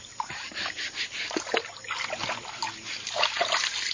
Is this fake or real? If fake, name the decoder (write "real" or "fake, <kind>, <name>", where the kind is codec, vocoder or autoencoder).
real